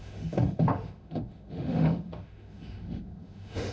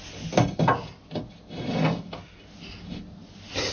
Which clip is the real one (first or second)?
second